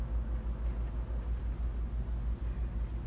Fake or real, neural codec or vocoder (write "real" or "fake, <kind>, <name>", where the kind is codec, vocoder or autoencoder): real